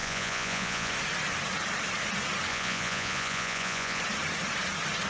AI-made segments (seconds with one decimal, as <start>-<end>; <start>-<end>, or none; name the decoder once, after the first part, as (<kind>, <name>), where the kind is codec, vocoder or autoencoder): 0.0-0.9 (vocoder, Vocos); 2.5-4.0